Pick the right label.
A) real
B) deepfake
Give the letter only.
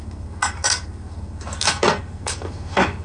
B